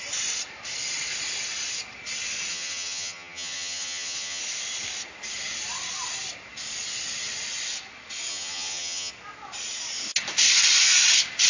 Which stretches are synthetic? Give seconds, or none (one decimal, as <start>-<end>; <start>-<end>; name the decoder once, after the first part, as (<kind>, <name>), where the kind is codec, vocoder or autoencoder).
2.5-4.4 (vocoder, HiFi-GAN); 8.3-9.1